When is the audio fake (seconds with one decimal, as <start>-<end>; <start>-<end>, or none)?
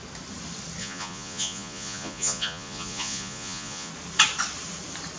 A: 0.8-3.9